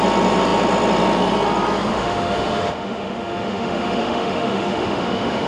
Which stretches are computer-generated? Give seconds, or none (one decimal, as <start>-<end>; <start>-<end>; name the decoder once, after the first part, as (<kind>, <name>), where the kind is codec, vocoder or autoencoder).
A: 1.9-5.5 (autoencoder, DAC-VAE)